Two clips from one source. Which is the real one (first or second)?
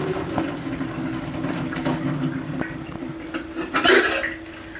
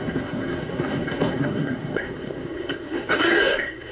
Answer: first